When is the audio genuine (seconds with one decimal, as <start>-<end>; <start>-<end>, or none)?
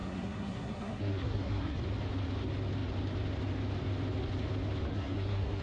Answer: 1.8-4.9